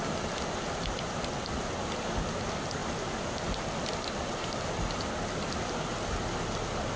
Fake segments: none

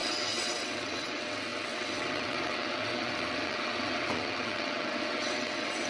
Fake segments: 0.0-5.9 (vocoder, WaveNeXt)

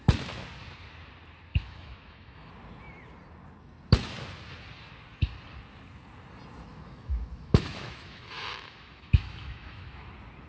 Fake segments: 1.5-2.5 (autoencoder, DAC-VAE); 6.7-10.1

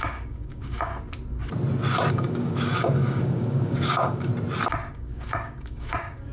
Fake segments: 0.0-0.9 (codec, DAC); 2.1-4.3; 4.9-6.3

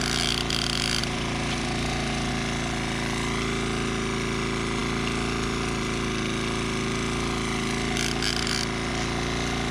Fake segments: 1.0-2.3 (vocoder, BigVGAN v2)

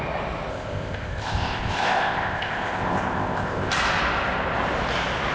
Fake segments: 0.5-3.7 (codec, ZipCodec)

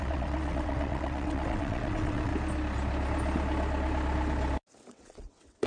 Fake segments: 0.0-2.3 (vocoder, WaveNeXt); 4.9-5.7